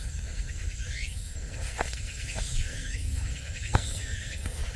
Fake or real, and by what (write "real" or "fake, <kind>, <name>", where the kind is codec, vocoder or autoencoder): fake, codec, SNAC